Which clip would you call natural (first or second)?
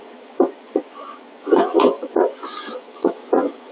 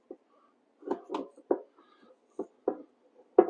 second